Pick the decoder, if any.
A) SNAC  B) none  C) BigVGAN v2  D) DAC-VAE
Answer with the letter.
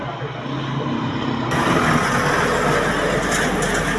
B